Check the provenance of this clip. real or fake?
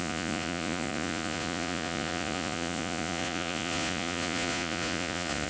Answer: fake